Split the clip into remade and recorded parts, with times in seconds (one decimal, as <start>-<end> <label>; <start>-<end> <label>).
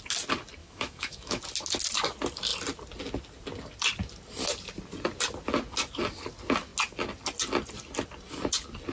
0.0-0.6 recorded; 0.6-1.4 remade; 1.4-8.9 recorded